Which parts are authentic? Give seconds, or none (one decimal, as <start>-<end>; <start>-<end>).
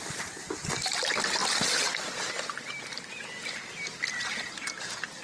0.0-5.2